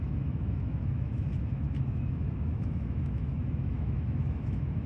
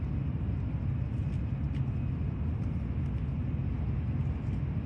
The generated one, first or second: first